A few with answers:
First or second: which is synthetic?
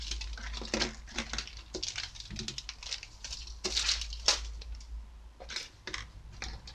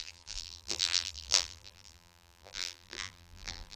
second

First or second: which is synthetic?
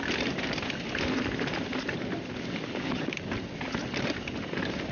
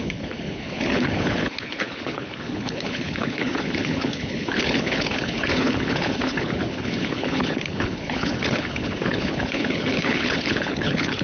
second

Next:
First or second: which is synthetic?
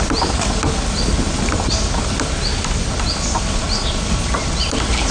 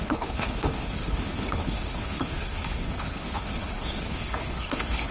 second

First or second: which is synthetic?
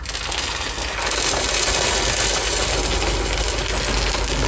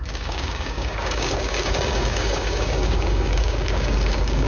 second